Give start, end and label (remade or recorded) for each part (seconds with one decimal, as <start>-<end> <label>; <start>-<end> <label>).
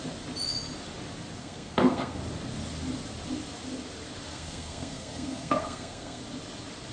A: 0.0-1.4 recorded; 1.4-2.2 remade; 2.2-4.3 recorded; 4.3-6.2 remade; 6.2-6.9 recorded